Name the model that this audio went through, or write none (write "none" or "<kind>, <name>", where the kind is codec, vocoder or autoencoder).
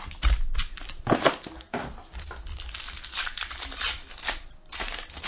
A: none